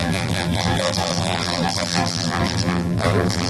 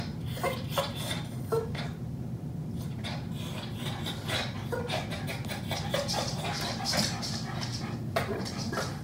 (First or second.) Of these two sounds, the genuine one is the second